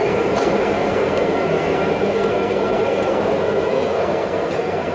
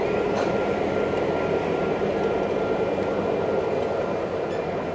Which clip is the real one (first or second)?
second